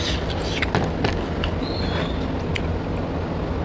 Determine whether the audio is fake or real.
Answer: real